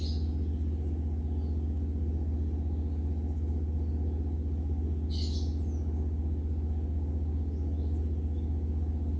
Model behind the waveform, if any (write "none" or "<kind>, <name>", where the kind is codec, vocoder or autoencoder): none